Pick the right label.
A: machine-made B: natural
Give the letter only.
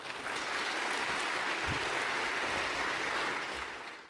B